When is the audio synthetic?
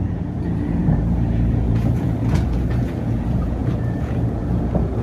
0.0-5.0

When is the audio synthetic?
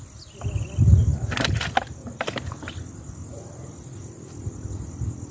none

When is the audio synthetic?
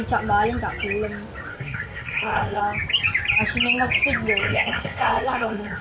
1.5-2.6; 4.4-5.8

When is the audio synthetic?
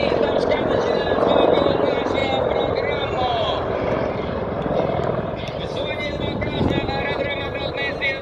none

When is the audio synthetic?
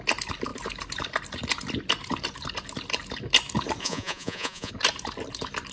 3.8-4.7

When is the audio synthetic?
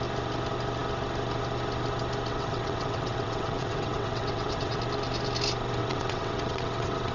2.3-4.8; 5.8-7.1